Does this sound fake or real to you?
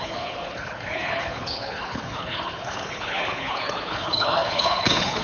fake